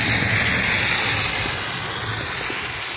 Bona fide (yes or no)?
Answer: yes